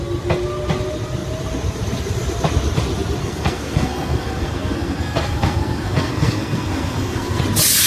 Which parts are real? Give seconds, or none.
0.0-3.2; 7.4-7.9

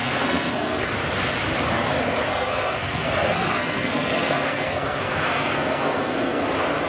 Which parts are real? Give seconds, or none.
0.9-2.3; 6.4-6.9

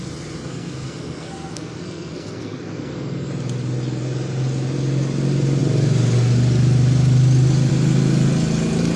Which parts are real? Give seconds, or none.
0.0-0.5; 3.3-9.0